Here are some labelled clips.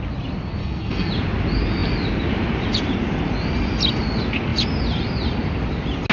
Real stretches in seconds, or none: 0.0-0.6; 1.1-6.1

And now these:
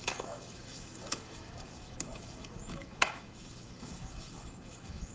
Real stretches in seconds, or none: none

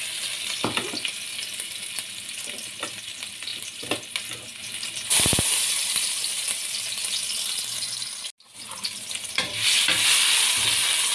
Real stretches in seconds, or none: 0.0-3.5; 6.7-8.5; 9.8-11.1